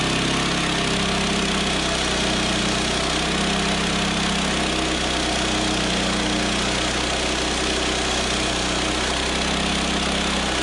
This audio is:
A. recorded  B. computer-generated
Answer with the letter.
A